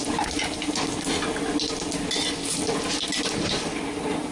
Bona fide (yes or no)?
yes